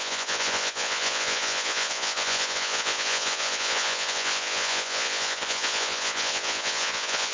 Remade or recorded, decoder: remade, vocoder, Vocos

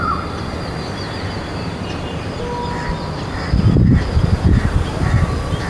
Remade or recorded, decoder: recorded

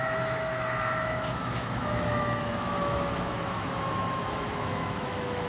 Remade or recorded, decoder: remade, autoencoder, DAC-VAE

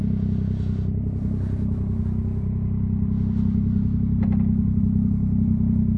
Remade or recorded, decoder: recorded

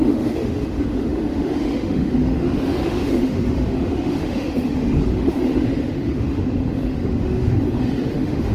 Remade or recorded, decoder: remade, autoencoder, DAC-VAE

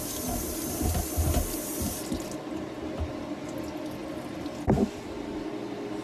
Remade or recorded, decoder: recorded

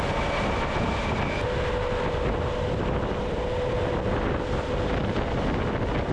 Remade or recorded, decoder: recorded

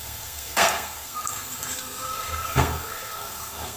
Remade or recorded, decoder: remade, codec, SNAC